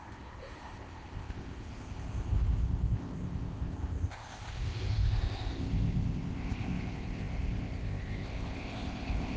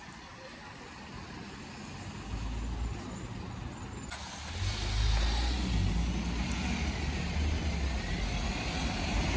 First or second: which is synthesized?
first